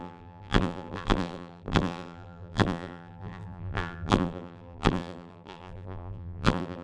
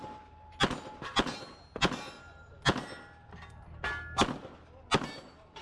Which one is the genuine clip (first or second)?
second